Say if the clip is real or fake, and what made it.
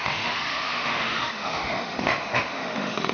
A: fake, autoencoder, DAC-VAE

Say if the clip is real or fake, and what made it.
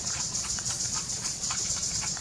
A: fake, vocoder, Vocos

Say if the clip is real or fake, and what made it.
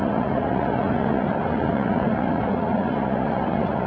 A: fake, vocoder, Vocos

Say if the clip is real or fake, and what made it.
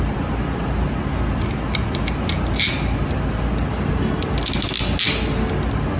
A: real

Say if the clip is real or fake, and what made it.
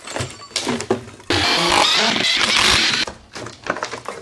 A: real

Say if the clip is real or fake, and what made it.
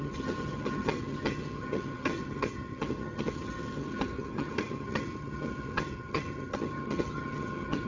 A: fake, vocoder, HiFi-GAN